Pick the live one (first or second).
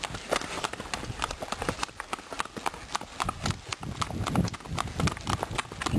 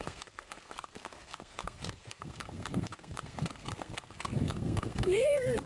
first